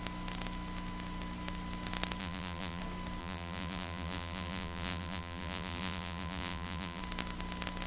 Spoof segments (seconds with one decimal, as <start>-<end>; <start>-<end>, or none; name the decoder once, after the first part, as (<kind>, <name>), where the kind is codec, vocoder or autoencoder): 2.2-2.8 (vocoder, BigVGAN v2); 3.2-7.0